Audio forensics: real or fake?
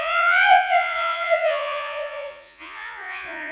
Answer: fake